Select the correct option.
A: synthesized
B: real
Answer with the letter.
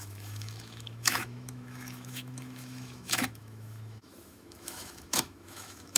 A